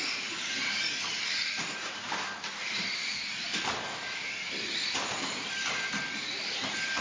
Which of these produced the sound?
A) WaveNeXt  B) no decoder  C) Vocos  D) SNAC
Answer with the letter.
B